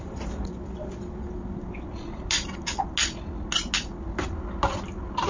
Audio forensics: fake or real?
real